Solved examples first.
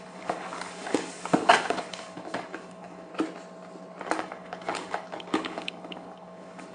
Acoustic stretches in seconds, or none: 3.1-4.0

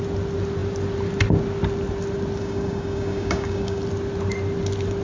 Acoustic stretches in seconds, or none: 0.0-2.4; 3.8-5.0

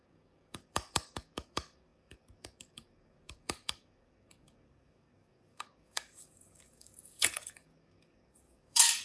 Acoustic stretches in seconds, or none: none

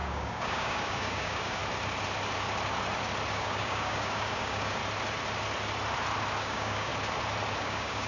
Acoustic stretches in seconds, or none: 1.6-3.3; 4.8-6.4; 6.9-7.6

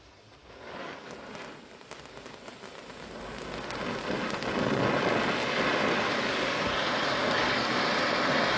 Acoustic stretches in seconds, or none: 0.0-0.4; 1.1-6.1; 6.7-7.2; 7.7-8.6

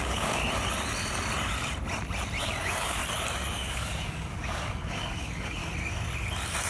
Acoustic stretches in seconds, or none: 0.4-2.4; 3.0-3.5; 5.6-6.7